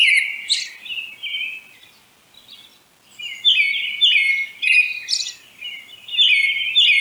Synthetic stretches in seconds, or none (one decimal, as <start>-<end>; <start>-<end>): none